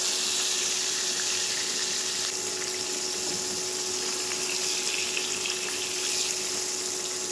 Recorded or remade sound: recorded